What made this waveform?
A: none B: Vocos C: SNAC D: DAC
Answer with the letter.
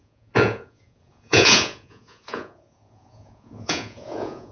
B